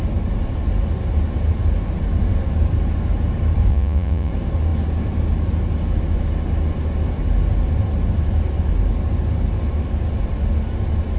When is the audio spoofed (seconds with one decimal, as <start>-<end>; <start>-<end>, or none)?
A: 3.7-4.3